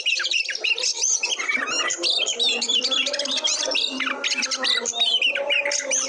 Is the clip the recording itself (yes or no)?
yes